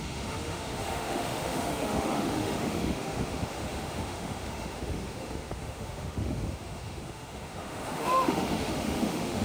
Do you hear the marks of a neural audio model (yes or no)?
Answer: yes